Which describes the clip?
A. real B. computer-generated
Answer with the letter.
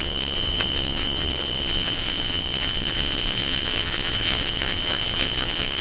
B